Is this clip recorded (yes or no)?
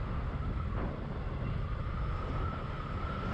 yes